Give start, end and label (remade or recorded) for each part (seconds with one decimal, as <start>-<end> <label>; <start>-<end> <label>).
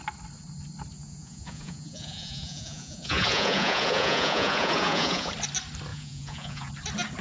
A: 0.0-1.0 recorded; 1.0-5.3 remade; 5.3-5.9 recorded; 5.9-6.7 remade; 6.7-7.2 recorded